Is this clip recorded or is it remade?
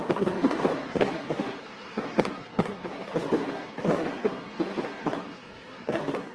remade